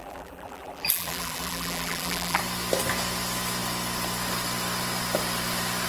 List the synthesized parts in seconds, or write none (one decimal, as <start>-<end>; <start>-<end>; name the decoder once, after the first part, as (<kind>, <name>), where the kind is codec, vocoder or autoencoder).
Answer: 0.0-2.4 (vocoder, BigVGAN v2)